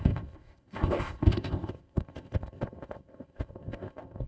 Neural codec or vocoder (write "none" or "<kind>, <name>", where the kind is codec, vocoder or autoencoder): codec, ZipCodec